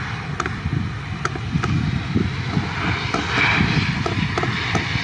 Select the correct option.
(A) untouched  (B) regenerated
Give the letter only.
A